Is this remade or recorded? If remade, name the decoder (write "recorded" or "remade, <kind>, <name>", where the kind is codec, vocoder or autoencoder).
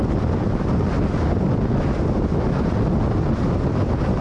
recorded